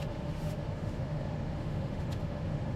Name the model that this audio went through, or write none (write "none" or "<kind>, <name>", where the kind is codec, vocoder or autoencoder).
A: autoencoder, DAC-VAE